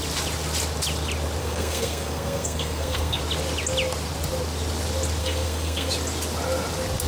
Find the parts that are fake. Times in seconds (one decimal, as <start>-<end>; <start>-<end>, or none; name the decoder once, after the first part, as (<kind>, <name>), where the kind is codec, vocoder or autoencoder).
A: 1.4-3.2 (codec, SNAC); 5.2-5.9